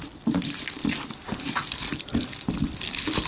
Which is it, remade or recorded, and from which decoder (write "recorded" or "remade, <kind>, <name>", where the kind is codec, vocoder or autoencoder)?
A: recorded